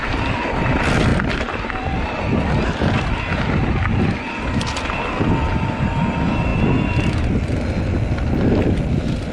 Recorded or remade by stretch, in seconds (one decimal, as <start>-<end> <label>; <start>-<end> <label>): 0.0-9.3 recorded